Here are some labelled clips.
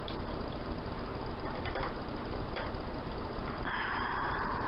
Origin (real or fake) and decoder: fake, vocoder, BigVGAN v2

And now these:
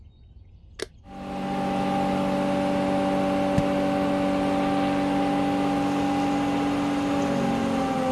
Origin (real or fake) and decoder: real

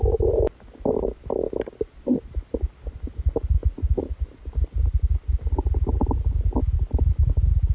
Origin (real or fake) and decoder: real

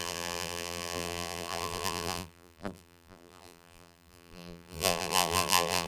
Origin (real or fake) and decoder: fake, vocoder, BigVGAN v2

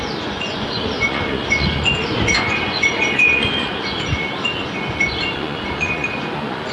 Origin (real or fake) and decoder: fake, vocoder, Vocos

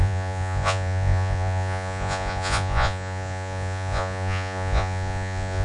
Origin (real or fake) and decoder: fake, vocoder, Vocos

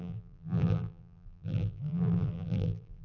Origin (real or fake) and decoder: fake, vocoder, BigVGAN v2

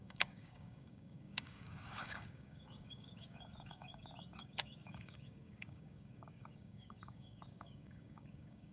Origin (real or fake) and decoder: fake, codec, DAC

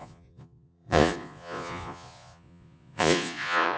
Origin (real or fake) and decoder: fake, vocoder, Vocos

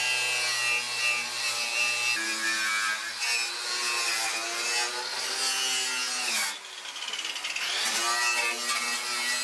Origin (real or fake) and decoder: real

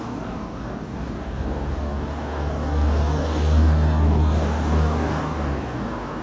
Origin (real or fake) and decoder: fake, codec, DAC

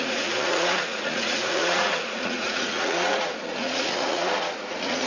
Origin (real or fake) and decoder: fake, vocoder, Vocos